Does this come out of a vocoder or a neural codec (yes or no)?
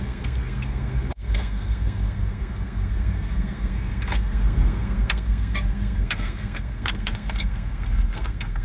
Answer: yes